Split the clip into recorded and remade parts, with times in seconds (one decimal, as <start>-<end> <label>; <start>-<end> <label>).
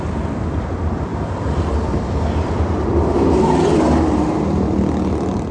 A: 0.0-1.1 recorded; 1.1-4.4 remade; 4.4-5.5 recorded